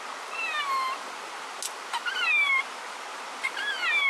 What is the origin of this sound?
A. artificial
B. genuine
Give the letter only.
B